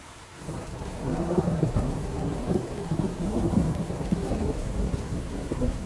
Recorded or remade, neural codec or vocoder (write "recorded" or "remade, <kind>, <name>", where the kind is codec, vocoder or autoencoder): remade, codec, SNAC